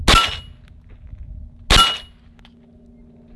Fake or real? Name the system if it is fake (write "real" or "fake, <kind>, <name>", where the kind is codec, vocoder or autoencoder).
real